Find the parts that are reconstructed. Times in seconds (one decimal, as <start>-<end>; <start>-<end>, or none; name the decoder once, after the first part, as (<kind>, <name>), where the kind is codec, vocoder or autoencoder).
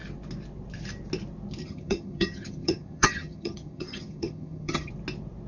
1.6-4.9 (vocoder, HiFi-GAN)